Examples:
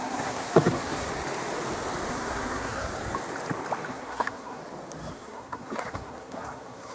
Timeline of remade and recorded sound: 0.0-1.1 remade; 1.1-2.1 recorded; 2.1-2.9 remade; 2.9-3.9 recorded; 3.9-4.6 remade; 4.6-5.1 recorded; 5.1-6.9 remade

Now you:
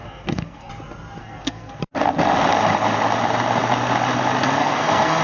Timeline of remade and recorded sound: 0.0-0.7 remade; 0.7-1.2 recorded; 1.2-1.8 remade; 1.8-4.6 recorded; 4.6-5.2 remade

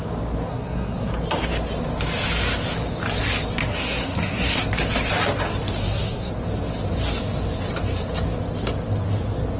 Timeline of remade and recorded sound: 0.0-0.5 recorded; 0.5-1.1 remade; 1.1-3.7 recorded; 3.7-4.6 remade; 4.6-5.8 recorded; 5.8-6.3 remade; 6.3-9.6 recorded

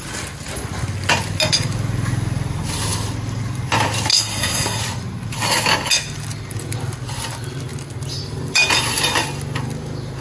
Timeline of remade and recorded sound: 0.0-4.1 recorded; 4.1-4.8 remade; 4.8-10.2 recorded

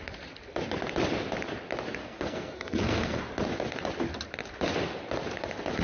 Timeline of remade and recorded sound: 0.0-2.0 recorded; 2.0-3.2 remade; 3.2-5.8 recorded